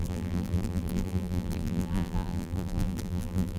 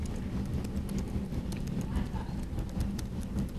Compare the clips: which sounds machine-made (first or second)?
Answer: first